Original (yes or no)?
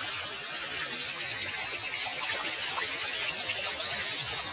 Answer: yes